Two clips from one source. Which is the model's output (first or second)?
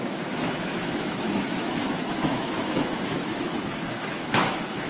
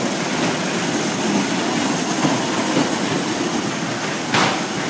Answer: first